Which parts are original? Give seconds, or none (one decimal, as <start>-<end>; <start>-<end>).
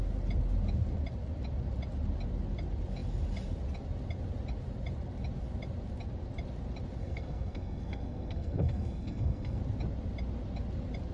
0.0-7.0; 9.6-11.1